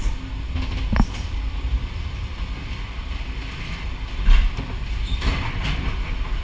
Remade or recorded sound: remade